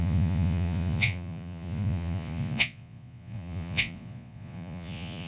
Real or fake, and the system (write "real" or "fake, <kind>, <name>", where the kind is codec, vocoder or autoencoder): fake, vocoder, Vocos